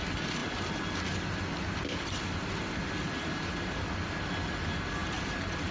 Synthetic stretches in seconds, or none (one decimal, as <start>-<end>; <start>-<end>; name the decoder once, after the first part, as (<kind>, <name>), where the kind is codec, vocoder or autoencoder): none